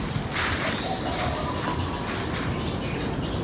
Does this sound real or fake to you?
real